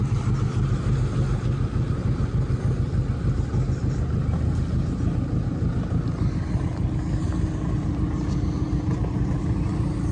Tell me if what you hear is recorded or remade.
recorded